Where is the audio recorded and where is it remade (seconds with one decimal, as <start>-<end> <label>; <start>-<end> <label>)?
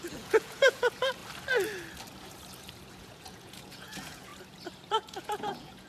0.0-1.2 remade; 1.2-2.9 recorded; 2.9-4.3 remade; 4.3-4.9 recorded; 4.9-5.9 remade